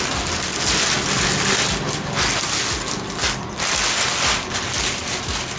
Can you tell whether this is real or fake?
real